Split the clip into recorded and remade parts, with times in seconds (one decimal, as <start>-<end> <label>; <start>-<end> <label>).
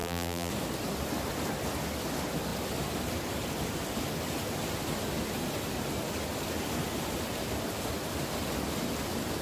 0.0-0.5 remade; 0.5-9.4 recorded